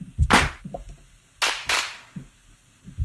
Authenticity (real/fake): real